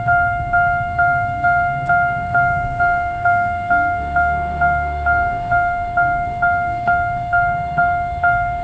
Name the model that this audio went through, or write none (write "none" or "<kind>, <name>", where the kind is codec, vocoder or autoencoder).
codec, SNAC